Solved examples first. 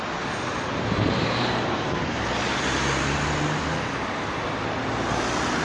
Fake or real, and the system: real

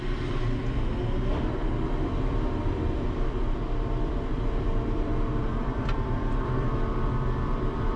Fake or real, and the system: fake, vocoder, BigVGAN v2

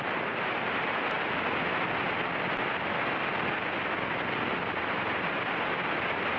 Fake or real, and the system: real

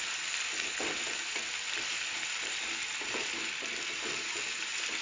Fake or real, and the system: fake, vocoder, BigVGAN v2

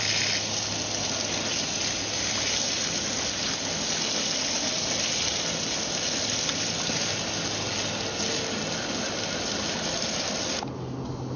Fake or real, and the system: real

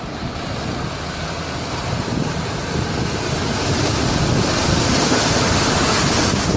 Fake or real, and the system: real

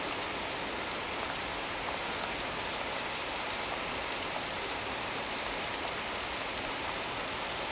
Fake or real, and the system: real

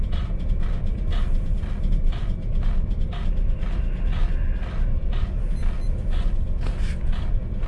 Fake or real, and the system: real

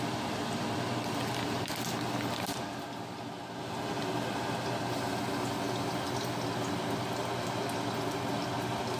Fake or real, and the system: real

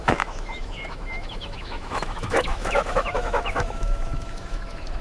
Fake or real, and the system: fake, autoencoder, DAC-VAE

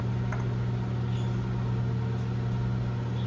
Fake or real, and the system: real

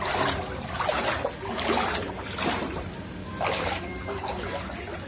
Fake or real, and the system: real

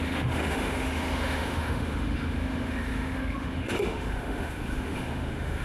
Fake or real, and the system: fake, autoencoder, DAC-VAE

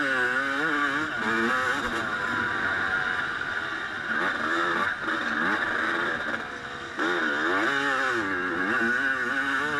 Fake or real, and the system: real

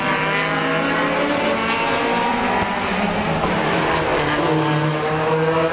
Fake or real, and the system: real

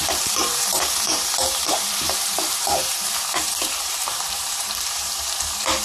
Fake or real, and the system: fake, vocoder, BigVGAN v2